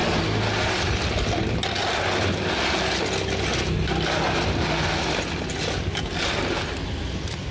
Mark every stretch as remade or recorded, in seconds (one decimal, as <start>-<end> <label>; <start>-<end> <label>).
0.0-7.5 recorded

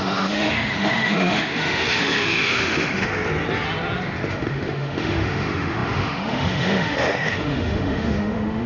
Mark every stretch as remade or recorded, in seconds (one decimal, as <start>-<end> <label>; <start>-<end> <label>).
0.0-3.1 remade; 3.1-4.3 recorded; 4.3-8.7 remade

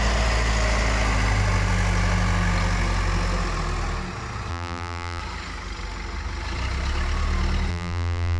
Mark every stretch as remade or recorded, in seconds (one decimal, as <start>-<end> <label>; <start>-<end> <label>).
0.0-4.5 recorded; 4.5-5.2 remade; 5.2-7.7 recorded; 7.7-8.4 remade